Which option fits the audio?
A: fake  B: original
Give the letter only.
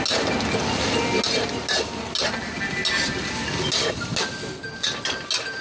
B